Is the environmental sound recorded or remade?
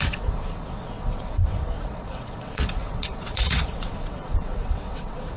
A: remade